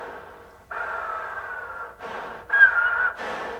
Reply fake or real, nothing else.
real